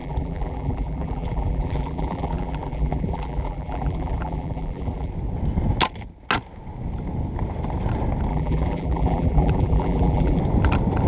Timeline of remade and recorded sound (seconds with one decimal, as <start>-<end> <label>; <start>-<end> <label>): 0.0-5.1 remade; 5.1-8.3 recorded; 8.3-10.4 remade; 10.4-11.1 recorded